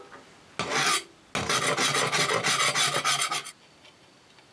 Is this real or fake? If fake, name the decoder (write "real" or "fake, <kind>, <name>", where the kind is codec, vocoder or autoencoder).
real